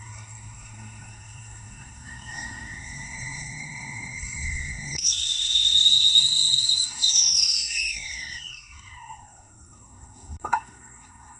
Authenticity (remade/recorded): remade